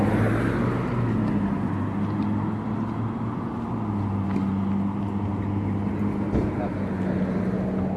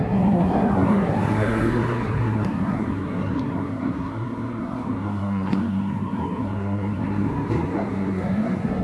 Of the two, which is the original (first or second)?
first